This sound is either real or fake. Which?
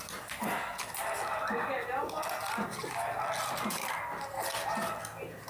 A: real